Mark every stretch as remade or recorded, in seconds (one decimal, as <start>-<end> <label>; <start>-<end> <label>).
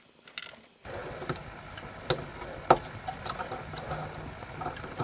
0.0-5.0 recorded